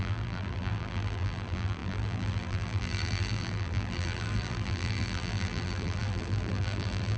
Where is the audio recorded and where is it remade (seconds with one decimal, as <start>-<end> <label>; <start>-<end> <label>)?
0.0-7.2 remade